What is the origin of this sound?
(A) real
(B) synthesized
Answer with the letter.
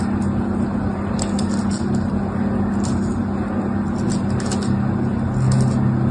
A